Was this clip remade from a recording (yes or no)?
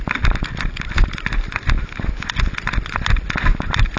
no